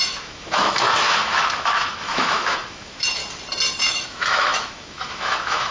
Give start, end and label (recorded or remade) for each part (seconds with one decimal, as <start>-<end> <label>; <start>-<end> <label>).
0.0-3.2 remade; 3.2-3.8 recorded; 3.8-5.7 remade